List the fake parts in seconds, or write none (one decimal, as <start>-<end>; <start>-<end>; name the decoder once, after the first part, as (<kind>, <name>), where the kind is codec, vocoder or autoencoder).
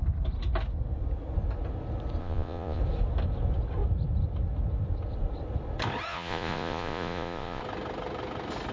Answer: 2.2-2.8 (vocoder, Vocos); 6.1-7.6